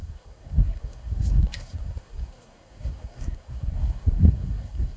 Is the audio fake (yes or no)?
yes